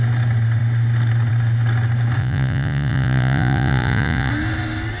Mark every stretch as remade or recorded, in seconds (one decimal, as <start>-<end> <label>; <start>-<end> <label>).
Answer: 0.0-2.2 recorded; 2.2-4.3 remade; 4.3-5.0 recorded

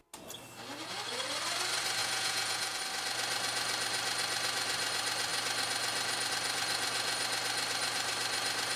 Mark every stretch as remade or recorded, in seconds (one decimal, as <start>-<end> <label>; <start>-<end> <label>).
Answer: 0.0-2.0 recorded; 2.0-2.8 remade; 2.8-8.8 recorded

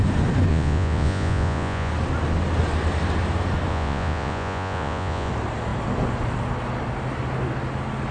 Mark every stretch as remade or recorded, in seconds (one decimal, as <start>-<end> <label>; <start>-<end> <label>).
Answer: 0.0-0.5 recorded; 0.5-1.9 remade; 1.9-3.7 recorded; 3.7-5.3 remade; 5.3-8.1 recorded

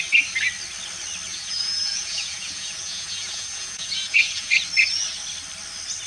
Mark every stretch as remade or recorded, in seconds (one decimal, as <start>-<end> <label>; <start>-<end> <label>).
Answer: 0.0-1.3 recorded; 1.3-4.5 remade; 4.5-6.1 recorded

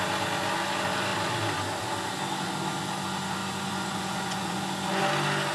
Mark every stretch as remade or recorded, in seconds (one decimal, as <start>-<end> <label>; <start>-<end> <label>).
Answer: 0.0-3.4 recorded; 3.4-4.6 remade; 4.6-5.5 recorded

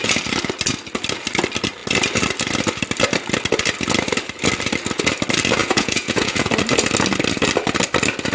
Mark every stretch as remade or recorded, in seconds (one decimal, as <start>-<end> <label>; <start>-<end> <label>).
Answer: 0.0-5.6 recorded; 5.6-6.5 remade; 6.5-8.3 recorded

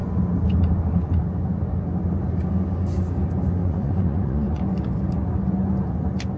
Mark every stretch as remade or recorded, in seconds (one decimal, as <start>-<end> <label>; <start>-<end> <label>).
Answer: 0.0-3.6 recorded; 3.6-4.6 remade; 4.6-6.4 recorded